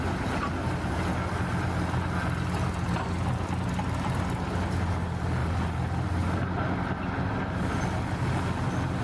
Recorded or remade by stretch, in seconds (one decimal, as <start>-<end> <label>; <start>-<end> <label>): 0.0-9.0 recorded